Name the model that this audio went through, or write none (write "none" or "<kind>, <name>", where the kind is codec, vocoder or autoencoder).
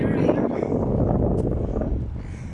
none